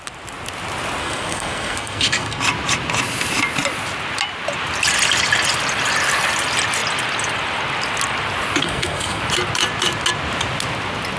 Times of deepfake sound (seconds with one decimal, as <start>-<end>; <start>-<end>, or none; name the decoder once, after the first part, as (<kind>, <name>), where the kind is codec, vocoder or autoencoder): 1.0-2.4 (codec, SNAC); 8.6-9.2